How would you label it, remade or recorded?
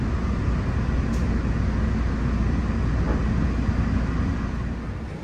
recorded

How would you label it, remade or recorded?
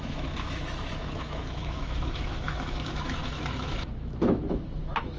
remade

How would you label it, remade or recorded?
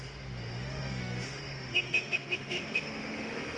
remade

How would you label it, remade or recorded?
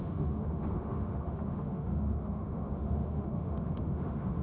remade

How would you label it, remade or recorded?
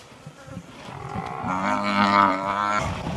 recorded